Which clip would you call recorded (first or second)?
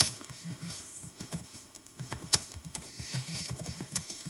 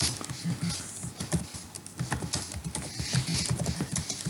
second